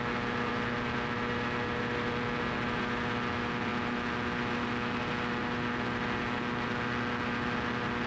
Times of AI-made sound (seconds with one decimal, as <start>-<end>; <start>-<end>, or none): none